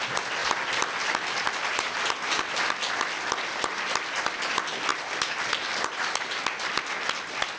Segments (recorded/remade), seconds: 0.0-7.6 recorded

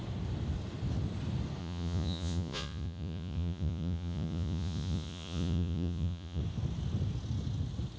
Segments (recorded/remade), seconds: 0.0-1.6 recorded; 1.6-6.4 remade; 6.4-8.0 recorded

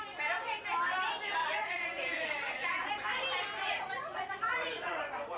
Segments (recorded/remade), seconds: 0.0-1.4 recorded; 1.4-2.9 remade; 2.9-3.6 recorded; 3.6-5.0 remade; 5.0-5.4 recorded

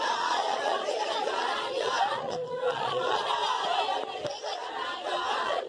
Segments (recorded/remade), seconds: 0.0-3.4 remade; 3.4-4.3 recorded; 4.3-5.7 remade

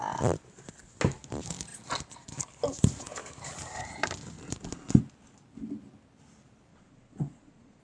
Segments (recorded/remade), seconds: 0.0-6.7 recorded; 6.7-7.8 remade